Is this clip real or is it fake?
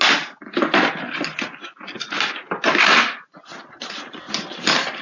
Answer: real